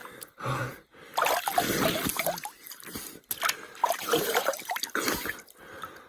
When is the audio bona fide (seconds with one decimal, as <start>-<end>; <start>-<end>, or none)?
0.0-3.8; 4.7-6.1